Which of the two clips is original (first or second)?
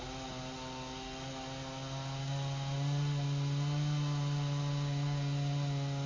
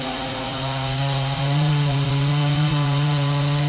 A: first